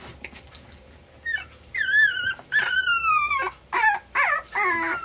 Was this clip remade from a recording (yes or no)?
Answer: no